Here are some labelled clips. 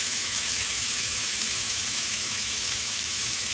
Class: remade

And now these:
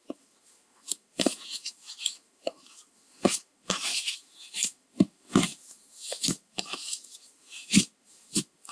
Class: remade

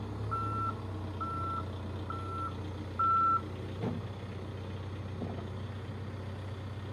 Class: recorded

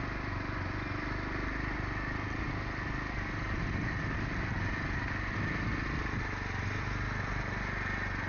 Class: recorded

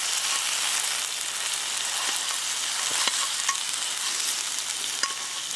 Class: recorded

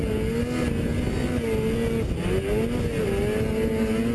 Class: recorded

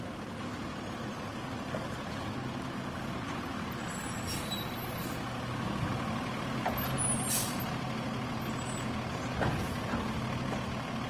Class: recorded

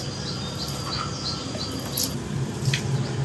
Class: recorded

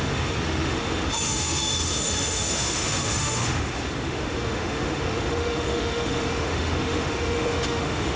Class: remade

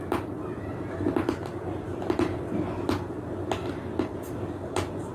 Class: recorded